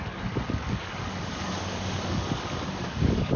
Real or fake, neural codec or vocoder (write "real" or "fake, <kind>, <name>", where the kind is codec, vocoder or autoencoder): fake, codec, DAC